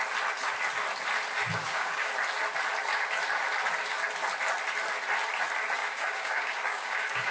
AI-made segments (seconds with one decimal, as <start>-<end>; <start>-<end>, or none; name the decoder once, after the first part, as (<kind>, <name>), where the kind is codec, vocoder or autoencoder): 1.5-2.1 (codec, DAC); 5.8-7.3